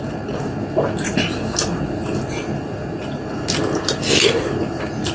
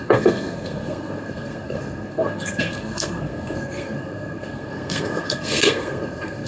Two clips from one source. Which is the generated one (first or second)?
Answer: second